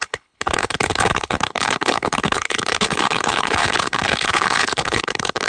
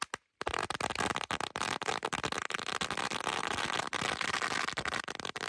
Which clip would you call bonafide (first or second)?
second